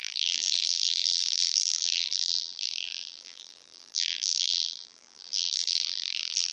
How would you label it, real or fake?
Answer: fake